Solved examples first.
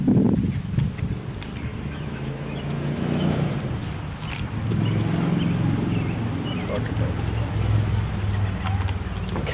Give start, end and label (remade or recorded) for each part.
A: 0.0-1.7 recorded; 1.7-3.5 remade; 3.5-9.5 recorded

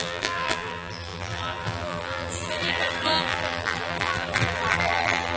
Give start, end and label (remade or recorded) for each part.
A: 0.0-5.4 remade

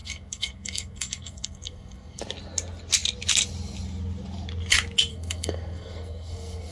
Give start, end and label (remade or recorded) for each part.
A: 0.0-2.2 remade; 2.2-5.1 recorded; 5.1-6.7 remade

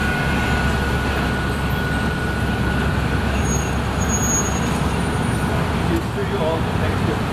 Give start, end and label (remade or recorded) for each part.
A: 0.0-7.3 recorded

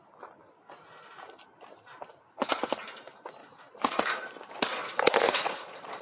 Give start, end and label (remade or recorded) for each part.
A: 0.0-3.4 recorded; 3.4-4.3 remade; 4.3-4.8 recorded; 4.8-6.0 remade